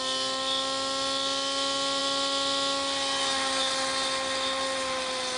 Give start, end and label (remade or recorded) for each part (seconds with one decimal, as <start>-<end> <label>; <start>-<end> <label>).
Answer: 0.0-5.4 recorded